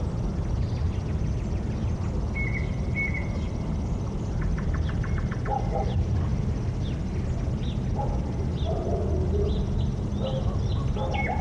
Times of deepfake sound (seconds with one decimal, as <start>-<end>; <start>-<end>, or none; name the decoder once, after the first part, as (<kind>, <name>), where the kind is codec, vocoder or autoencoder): none